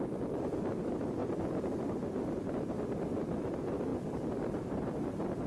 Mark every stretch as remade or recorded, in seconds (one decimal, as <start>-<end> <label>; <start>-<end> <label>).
0.0-1.2 recorded; 1.2-1.7 remade; 1.7-3.9 recorded; 3.9-4.4 remade; 4.4-5.5 recorded